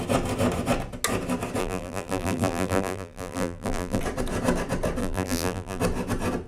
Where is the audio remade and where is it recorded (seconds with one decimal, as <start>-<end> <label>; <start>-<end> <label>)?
0.0-1.6 recorded; 1.6-4.0 remade; 4.0-5.0 recorded; 5.0-5.8 remade; 5.8-6.5 recorded